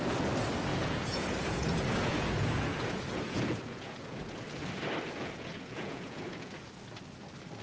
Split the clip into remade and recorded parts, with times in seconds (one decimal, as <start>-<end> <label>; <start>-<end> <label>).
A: 0.0-0.7 recorded; 0.7-4.2 remade; 4.2-5.2 recorded; 5.2-6.7 remade; 6.7-7.6 recorded